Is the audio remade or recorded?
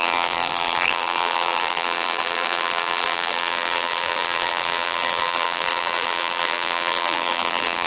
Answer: remade